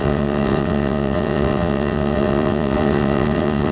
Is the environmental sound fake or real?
fake